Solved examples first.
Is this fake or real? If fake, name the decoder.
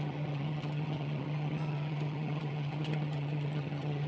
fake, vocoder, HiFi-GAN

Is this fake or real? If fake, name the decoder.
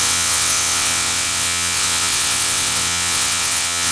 fake, vocoder, WaveNeXt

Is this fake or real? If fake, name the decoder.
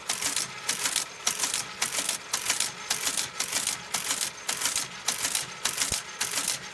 real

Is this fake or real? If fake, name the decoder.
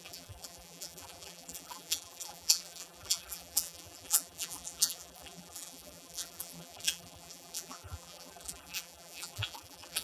fake, vocoder, BigVGAN v2